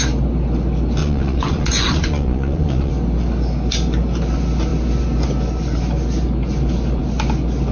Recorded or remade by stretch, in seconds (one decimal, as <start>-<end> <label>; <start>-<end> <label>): 0.0-1.0 recorded; 1.0-2.9 remade; 2.9-7.7 recorded